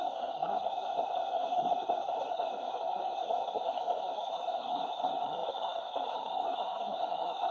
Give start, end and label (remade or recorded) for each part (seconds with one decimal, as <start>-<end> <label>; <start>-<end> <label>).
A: 0.0-7.5 remade